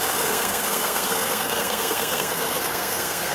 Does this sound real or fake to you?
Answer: fake